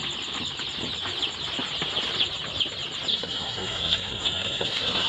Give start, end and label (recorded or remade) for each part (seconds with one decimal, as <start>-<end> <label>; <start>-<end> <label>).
0.0-3.1 recorded; 3.1-5.1 remade